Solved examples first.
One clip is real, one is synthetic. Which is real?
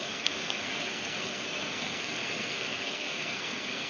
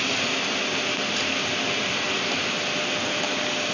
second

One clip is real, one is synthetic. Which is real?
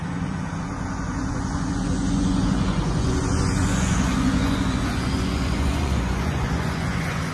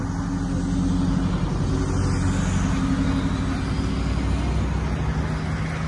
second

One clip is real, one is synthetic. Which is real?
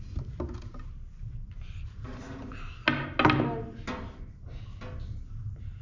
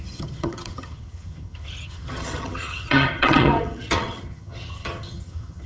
first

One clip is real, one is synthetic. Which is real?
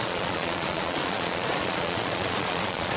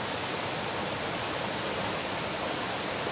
second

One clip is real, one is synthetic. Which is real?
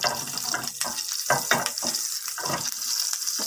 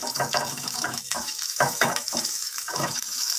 first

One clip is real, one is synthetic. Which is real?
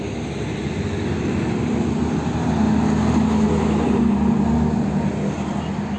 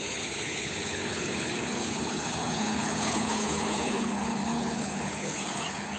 first